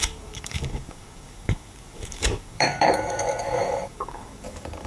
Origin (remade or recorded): remade